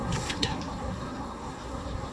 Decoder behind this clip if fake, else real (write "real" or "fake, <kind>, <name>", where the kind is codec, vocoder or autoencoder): fake, codec, SNAC